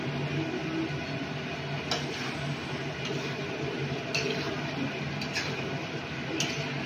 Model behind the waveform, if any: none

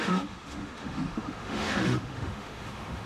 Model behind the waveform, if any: autoencoder, DAC-VAE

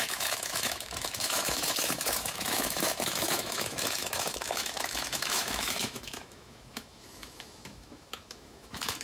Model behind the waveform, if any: autoencoder, DAC-VAE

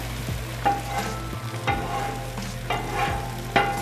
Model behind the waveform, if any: none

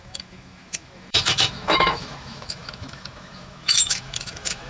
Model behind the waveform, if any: autoencoder, DAC-VAE